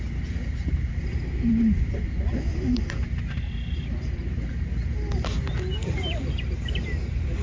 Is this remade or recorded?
recorded